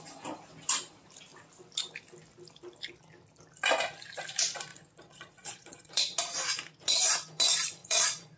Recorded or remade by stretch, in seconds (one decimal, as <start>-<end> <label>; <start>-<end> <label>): 0.0-4.7 recorded; 4.7-6.0 remade; 6.0-7.8 recorded; 7.8-8.4 remade